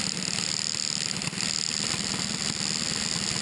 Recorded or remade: recorded